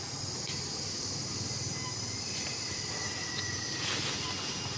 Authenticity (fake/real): real